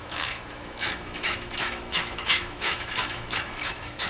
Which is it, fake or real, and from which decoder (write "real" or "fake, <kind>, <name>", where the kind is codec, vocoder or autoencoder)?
fake, autoencoder, DAC-VAE